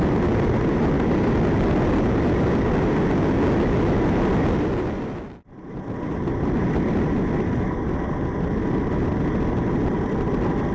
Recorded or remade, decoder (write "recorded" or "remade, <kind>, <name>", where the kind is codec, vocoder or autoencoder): recorded